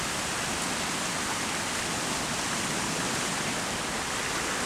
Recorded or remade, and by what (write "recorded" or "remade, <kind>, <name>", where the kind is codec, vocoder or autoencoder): recorded